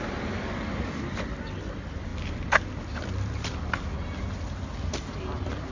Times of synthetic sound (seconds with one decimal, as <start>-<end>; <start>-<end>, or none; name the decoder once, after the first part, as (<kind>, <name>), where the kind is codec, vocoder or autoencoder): none